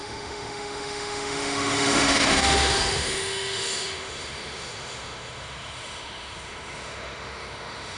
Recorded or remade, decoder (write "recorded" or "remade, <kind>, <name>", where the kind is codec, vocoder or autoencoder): remade, autoencoder, DAC-VAE